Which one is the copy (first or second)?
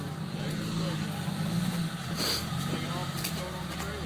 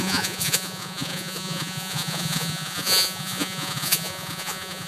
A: second